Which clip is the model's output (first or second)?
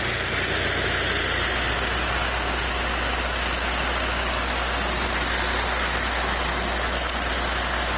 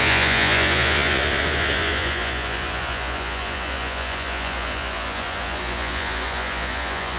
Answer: second